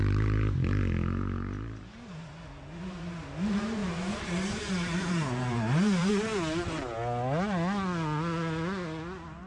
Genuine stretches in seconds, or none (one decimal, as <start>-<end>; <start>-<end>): 0.0-3.8; 6.1-9.5